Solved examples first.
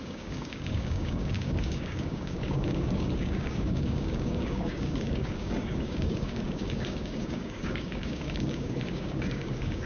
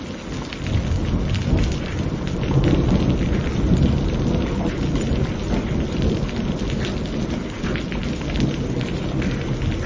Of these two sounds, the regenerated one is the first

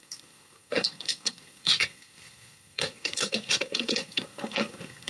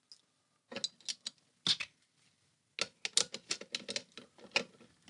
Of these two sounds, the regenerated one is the first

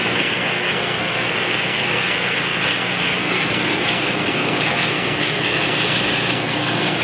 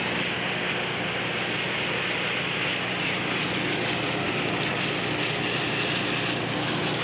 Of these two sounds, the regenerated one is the first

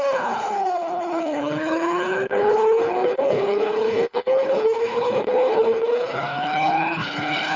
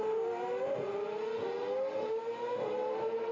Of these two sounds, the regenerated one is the first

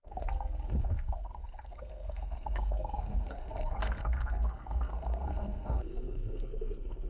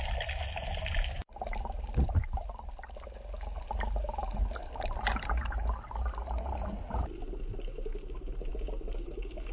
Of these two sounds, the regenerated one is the first